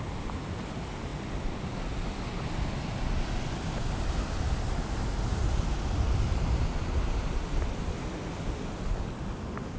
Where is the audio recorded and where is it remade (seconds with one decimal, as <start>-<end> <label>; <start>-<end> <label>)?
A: 0.0-9.8 recorded